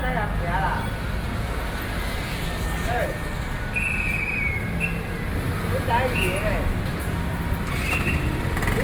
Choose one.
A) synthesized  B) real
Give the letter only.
B